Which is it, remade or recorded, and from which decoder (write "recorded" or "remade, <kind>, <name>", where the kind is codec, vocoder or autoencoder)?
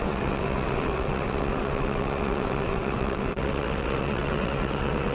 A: remade, vocoder, WaveNeXt